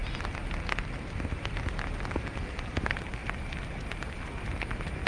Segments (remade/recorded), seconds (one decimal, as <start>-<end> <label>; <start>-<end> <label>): 0.0-5.1 recorded